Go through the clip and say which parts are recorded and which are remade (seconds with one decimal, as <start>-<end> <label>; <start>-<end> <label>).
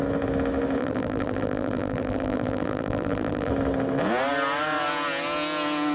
0.0-0.8 recorded; 0.8-3.5 remade; 3.5-5.9 recorded